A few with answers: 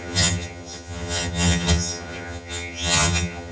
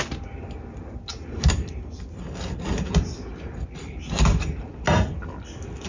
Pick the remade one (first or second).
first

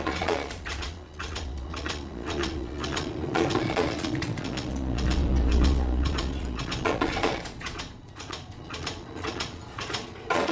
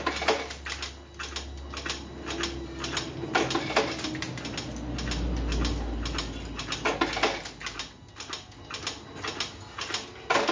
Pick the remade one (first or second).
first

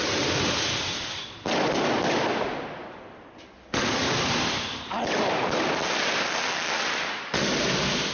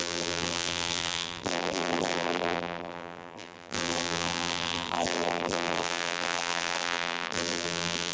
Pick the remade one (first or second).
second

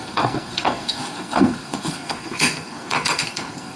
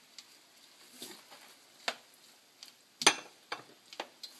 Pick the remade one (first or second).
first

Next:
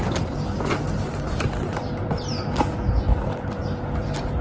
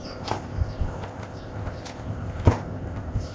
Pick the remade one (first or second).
second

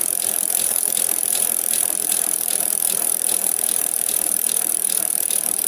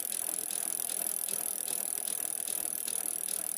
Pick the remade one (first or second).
first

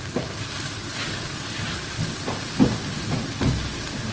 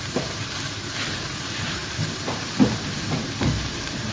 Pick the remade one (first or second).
second